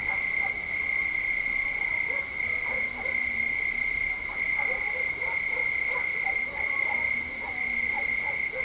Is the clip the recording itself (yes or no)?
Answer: yes